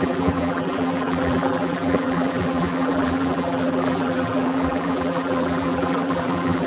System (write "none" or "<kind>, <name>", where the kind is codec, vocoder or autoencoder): vocoder, BigVGAN v2